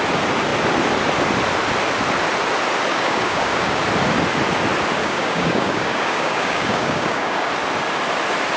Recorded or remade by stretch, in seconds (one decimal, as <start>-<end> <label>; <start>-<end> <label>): 0.0-2.9 recorded; 2.9-3.8 remade; 3.8-5.0 recorded; 5.0-7.5 remade; 7.5-8.6 recorded